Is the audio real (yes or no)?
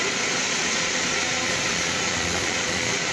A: no